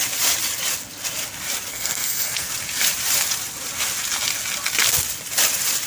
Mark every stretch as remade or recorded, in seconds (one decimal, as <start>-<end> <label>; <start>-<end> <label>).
0.0-1.7 recorded; 1.7-2.5 remade; 2.5-5.9 recorded